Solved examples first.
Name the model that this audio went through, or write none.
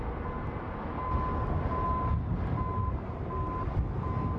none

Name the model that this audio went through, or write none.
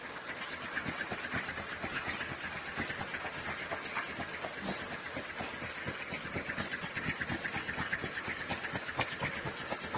none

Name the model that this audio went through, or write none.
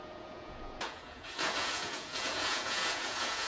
vocoder, Vocos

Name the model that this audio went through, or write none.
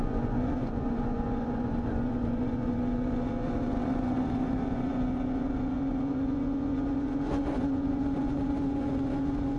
vocoder, Vocos